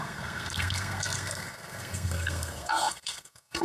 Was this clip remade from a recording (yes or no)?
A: yes